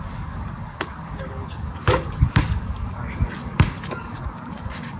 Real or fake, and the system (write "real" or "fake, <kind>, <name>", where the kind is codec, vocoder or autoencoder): fake, codec, DAC